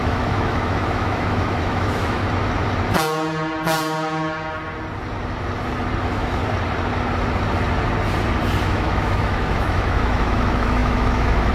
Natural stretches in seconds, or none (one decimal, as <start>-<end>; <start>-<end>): 2.2-6.0; 6.4-8.6